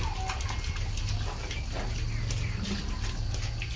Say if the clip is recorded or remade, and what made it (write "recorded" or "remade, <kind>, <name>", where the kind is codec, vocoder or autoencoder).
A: recorded